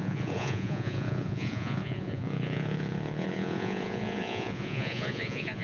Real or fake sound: fake